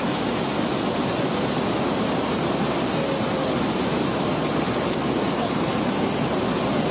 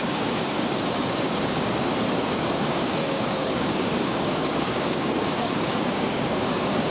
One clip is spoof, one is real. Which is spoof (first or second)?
second